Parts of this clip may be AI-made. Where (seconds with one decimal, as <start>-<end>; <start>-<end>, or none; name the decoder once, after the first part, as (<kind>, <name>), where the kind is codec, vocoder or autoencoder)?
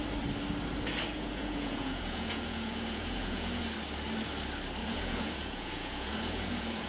1.1-3.6 (vocoder, Vocos); 4.8-6.9